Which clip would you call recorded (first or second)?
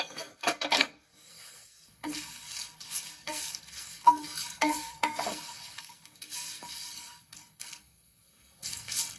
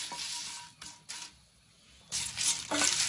second